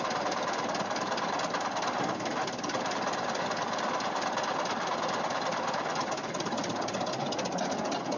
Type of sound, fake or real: real